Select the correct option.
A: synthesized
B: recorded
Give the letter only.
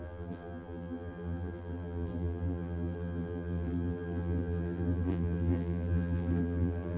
A